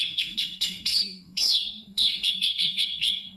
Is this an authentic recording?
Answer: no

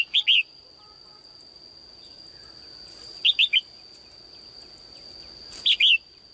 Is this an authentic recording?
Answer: yes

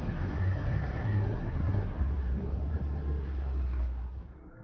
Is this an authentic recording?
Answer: no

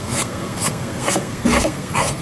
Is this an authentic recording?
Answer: no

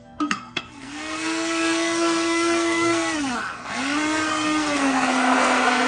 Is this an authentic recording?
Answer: no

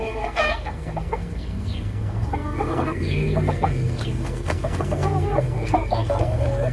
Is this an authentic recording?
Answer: no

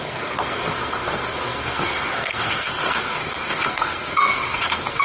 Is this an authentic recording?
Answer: no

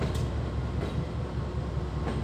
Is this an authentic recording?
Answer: yes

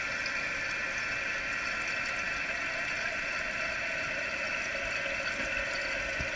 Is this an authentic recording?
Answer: yes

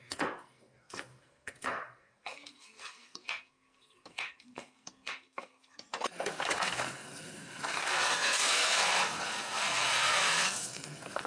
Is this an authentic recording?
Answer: no